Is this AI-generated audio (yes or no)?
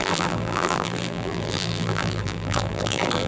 yes